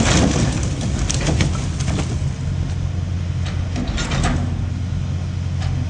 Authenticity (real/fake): real